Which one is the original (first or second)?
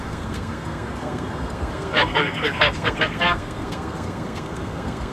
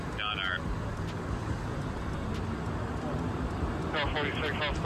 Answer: second